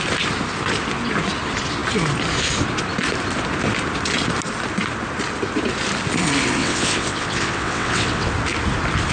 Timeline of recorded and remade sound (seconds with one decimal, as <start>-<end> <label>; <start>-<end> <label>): 0.0-6.6 recorded; 6.6-8.3 remade; 8.3-9.1 recorded